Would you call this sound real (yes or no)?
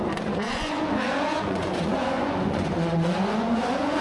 no